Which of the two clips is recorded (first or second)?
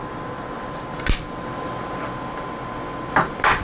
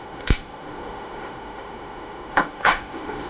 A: first